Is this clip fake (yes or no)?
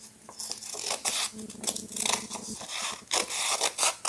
no